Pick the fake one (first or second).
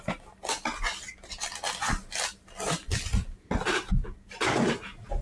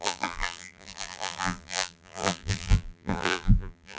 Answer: second